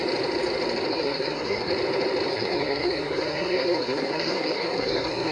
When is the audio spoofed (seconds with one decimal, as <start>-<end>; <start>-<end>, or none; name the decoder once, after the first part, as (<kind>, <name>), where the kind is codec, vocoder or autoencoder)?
0.9-1.7 (codec, SNAC); 2.3-5.3